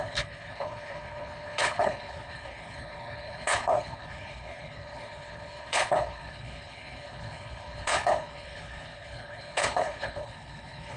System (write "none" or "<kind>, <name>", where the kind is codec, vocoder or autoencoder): codec, HILCodec